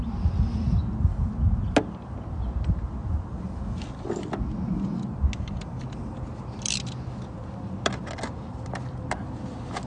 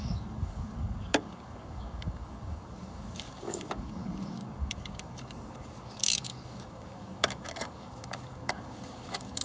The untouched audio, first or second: first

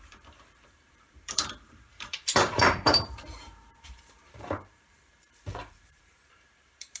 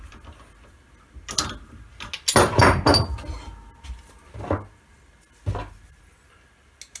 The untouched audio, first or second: second